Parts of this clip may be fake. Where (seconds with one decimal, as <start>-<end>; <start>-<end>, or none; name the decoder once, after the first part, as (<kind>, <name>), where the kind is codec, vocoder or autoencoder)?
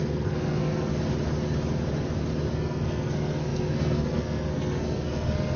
0.0-0.9 (codec, SNAC); 2.5-5.6